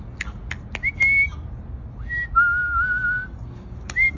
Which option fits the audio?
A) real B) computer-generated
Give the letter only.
A